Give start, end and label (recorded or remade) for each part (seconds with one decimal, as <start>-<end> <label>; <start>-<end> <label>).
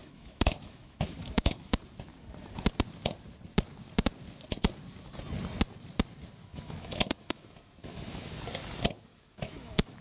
0.0-1.8 remade; 1.8-6.4 recorded; 6.4-8.3 remade; 8.3-9.1 recorded; 9.1-10.0 remade